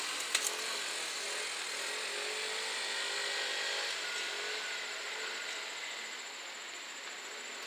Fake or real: real